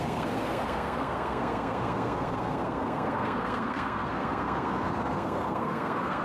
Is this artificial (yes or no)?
yes